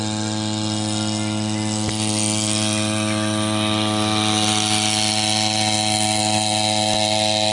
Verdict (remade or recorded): recorded